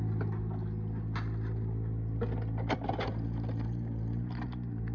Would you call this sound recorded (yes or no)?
yes